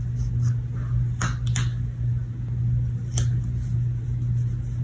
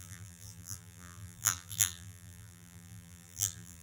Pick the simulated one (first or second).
second